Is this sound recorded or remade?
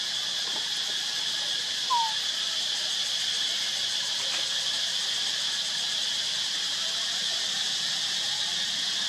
recorded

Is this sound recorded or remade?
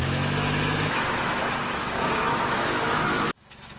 remade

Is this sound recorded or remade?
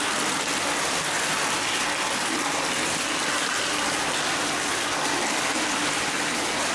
recorded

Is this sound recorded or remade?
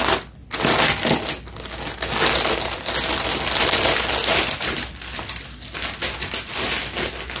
recorded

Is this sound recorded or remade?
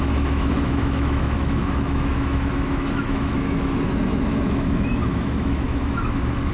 remade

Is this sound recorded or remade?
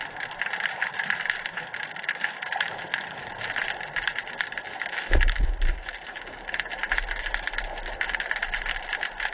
recorded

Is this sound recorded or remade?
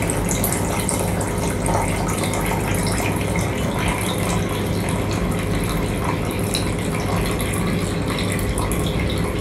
recorded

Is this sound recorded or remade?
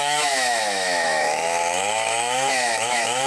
remade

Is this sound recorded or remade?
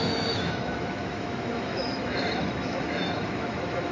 remade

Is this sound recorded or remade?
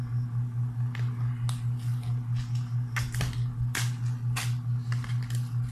recorded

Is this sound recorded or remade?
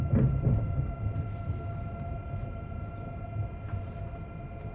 recorded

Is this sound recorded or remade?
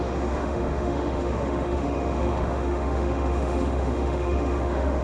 remade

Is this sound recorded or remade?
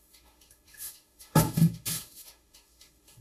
remade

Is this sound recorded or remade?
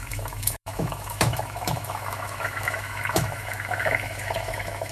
remade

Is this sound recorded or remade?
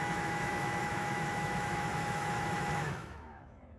remade